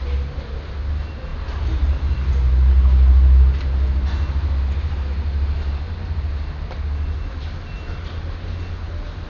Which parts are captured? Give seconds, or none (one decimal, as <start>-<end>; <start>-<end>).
0.0-9.3